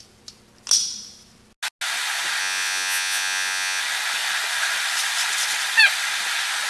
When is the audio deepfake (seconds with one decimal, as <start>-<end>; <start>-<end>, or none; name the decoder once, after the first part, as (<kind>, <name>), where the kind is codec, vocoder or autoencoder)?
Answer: 2.4-3.8 (vocoder, Vocos)